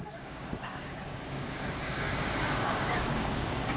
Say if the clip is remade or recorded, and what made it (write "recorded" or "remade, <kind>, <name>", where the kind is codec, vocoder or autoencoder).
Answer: remade, codec, DAC